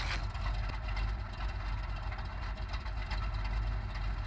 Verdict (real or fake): real